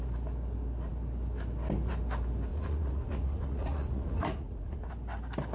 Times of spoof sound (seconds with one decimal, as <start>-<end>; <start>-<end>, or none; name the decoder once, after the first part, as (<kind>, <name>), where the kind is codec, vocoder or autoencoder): 2.5-4.9 (vocoder, Vocos)